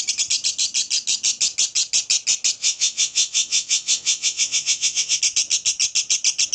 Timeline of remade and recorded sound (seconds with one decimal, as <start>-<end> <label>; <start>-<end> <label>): 0.0-2.6 recorded; 2.6-5.2 remade; 5.2-6.5 recorded